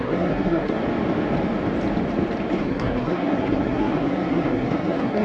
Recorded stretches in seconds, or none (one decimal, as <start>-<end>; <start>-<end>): 0.8-2.5